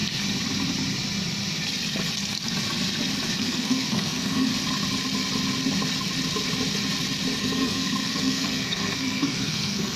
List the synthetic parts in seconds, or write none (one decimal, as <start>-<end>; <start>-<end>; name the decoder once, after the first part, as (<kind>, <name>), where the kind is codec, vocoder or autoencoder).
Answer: 3.4-4.5 (codec, SNAC); 7.4-10.0